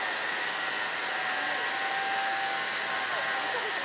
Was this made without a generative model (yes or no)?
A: yes